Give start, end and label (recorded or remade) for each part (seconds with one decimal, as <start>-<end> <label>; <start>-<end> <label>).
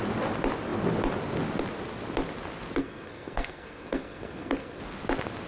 0.0-2.8 recorded; 2.8-4.8 remade; 4.8-5.5 recorded